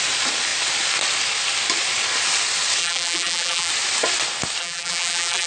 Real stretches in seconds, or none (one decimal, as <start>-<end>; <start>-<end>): 0.0-2.8; 3.7-4.6